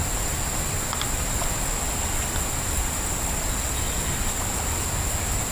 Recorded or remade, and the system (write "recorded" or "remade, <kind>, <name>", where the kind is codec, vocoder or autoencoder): recorded